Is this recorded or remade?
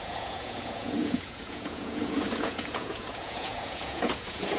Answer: remade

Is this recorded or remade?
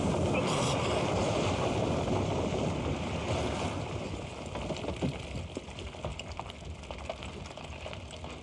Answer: recorded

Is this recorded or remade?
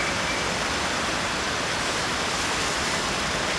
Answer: remade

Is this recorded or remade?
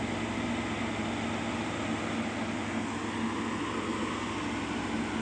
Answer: recorded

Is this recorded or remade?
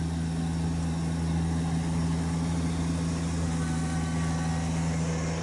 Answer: recorded